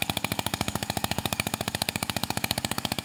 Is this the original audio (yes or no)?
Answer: no